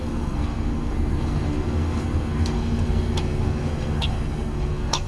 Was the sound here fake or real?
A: fake